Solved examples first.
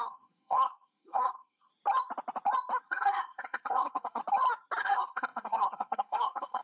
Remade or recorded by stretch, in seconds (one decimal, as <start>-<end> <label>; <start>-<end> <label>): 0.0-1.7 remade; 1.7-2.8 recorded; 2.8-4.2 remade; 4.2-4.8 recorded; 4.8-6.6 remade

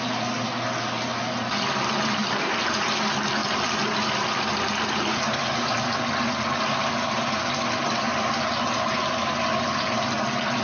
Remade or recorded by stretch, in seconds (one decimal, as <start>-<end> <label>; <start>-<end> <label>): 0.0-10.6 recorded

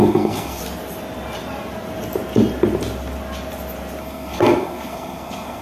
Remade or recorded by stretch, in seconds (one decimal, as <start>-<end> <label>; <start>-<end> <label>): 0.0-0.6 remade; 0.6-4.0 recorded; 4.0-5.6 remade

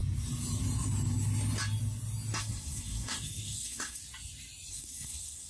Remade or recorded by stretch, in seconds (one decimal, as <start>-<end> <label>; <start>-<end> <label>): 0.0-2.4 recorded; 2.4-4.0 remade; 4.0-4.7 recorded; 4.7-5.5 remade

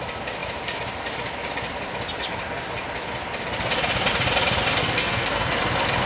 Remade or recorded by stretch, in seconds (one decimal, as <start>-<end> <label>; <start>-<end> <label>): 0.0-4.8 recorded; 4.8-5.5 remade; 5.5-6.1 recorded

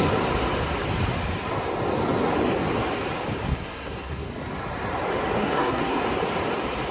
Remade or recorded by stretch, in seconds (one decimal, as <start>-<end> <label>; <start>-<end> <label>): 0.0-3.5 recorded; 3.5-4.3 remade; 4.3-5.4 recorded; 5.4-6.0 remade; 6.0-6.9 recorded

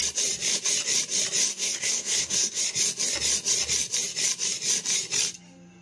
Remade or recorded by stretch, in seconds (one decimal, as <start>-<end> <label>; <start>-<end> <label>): 0.0-1.5 recorded; 1.5-2.6 remade; 2.6-5.8 recorded

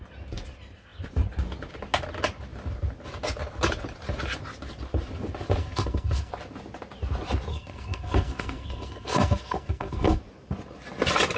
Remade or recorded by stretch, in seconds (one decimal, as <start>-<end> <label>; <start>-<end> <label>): 0.0-5.6 recorded; 5.6-6.3 remade; 6.3-7.5 recorded; 7.5-10.2 remade; 10.2-11.4 recorded